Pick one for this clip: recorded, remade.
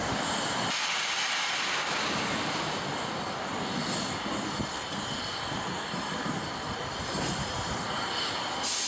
remade